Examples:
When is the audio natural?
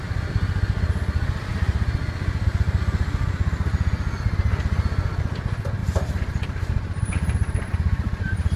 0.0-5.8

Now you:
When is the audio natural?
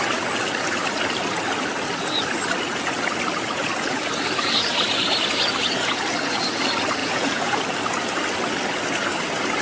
0.0-7.0; 7.6-9.6